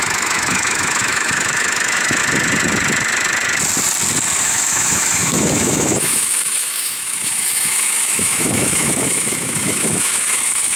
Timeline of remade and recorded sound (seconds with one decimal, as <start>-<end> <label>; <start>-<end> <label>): 0.0-2.2 remade; 2.2-4.4 recorded; 4.4-10.8 remade